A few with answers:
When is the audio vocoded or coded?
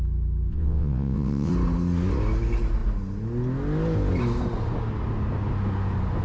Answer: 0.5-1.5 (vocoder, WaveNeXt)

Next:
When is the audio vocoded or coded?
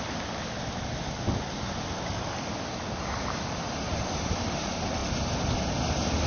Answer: none